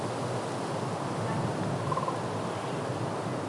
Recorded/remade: recorded